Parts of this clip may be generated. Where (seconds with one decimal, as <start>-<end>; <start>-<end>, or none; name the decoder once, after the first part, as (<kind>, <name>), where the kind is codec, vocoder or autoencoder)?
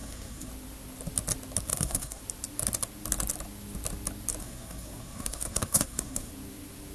0.0-0.5 (codec, SNAC); 1.7-2.2; 4.4-6.3